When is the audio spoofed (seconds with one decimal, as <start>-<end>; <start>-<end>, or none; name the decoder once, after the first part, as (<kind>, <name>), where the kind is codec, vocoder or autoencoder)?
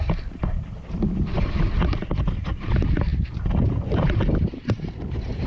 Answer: none